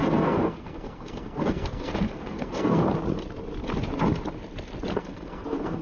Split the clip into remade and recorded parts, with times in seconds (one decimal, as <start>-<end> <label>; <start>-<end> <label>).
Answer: 0.0-2.8 remade; 2.8-5.0 recorded; 5.0-5.8 remade